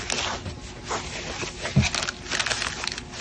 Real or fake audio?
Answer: real